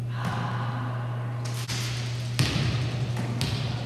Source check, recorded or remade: recorded